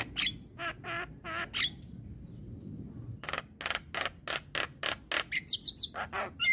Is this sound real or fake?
real